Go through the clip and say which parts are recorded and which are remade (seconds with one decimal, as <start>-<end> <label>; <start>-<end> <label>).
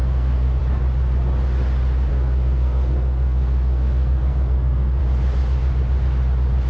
0.0-0.6 remade; 0.6-2.1 recorded; 2.1-5.0 remade; 5.0-6.7 recorded